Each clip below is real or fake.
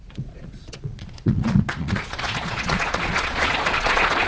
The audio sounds fake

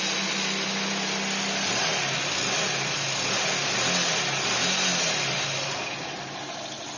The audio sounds real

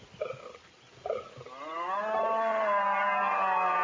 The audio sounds real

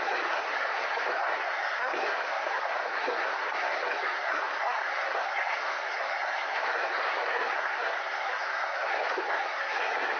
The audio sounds fake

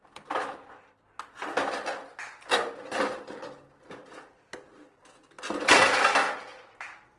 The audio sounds real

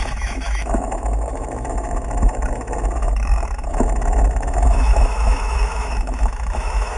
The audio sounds fake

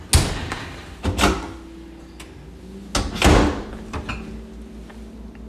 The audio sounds real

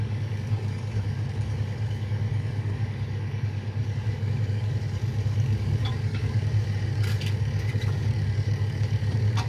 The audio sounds fake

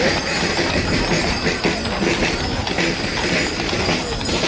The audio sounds real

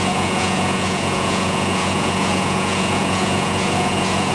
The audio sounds fake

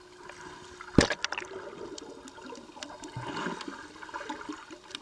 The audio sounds real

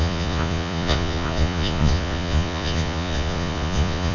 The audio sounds fake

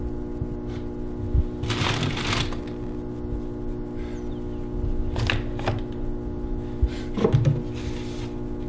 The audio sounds real